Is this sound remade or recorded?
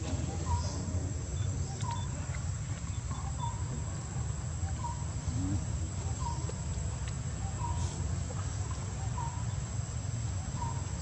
recorded